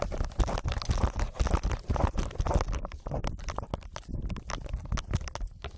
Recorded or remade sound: recorded